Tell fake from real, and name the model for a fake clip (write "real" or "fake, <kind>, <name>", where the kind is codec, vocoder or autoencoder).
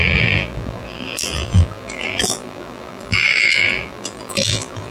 fake, vocoder, BigVGAN v2